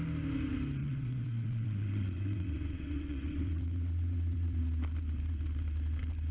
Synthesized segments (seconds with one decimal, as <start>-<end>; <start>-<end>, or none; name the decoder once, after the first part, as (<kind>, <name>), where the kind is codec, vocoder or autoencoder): 0.8-4.6 (vocoder, WaveNeXt)